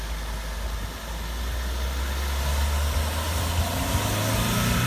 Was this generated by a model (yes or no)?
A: no